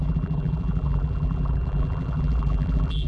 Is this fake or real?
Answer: fake